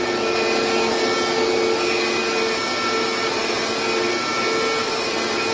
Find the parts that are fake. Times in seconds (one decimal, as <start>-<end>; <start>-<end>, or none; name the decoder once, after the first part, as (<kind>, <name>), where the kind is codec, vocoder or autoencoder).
none